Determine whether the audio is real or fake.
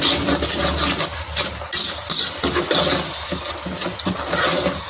real